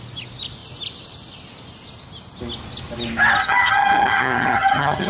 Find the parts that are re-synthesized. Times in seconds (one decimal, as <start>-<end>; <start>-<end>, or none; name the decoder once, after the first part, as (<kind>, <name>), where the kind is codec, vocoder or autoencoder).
3.4-5.1 (vocoder, HiFi-GAN)